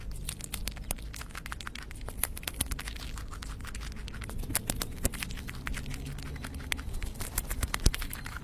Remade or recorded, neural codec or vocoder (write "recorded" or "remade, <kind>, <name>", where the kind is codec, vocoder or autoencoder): recorded